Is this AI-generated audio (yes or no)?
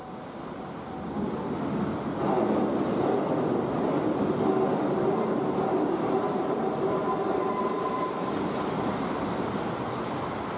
no